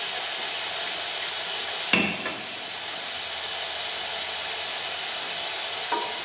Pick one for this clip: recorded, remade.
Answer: recorded